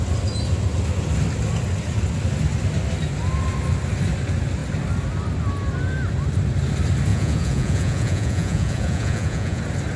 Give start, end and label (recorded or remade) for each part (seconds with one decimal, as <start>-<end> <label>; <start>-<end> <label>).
0.0-7.1 recorded; 7.1-9.6 remade; 9.6-10.0 recorded